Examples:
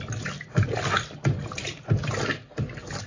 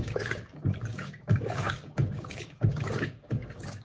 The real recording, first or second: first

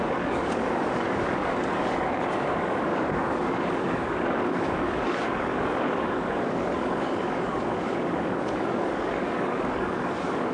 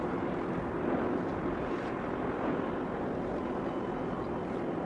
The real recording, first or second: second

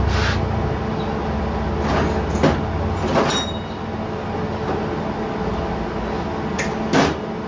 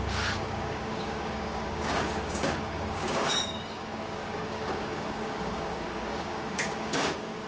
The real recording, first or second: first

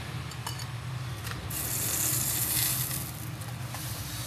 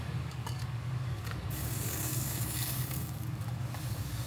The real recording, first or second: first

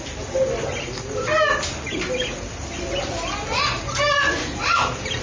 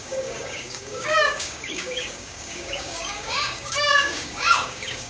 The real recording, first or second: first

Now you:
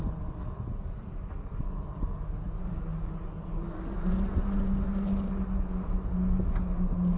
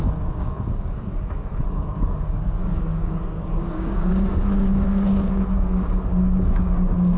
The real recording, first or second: first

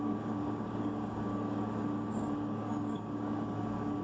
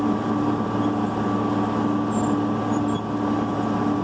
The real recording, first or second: second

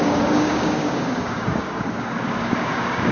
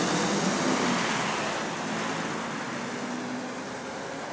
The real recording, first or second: second